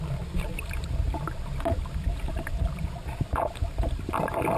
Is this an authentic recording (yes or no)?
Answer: yes